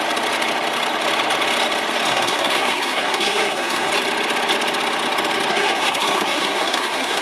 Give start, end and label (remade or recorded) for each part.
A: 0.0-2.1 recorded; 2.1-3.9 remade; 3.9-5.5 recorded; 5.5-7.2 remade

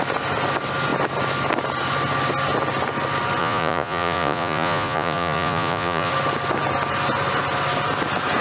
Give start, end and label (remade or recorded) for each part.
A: 0.0-3.4 recorded; 3.4-6.1 remade; 6.1-8.4 recorded

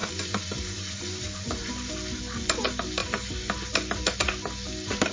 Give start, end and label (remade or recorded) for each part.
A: 0.0-1.9 remade; 1.9-3.0 recorded; 3.0-3.7 remade; 3.7-5.1 recorded

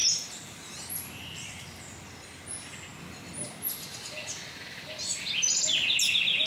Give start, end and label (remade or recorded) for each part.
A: 0.0-1.5 remade; 1.5-6.5 recorded

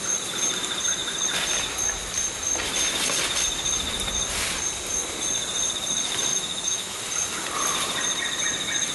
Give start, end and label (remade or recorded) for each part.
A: 0.0-6.3 recorded; 6.3-7.0 remade; 7.0-8.9 recorded

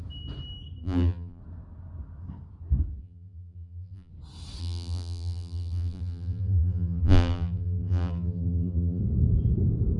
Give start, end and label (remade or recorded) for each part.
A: 0.0-0.8 recorded; 0.8-1.4 remade; 1.4-3.0 recorded; 3.0-4.1 remade; 4.1-4.6 recorded; 4.6-9.0 remade; 9.0-10.0 recorded

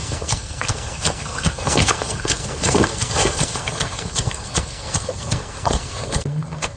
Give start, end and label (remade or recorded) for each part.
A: 0.0-6.8 remade

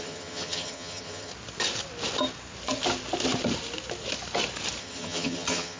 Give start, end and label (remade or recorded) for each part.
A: 0.0-1.3 remade; 1.3-4.8 recorded; 4.8-5.8 remade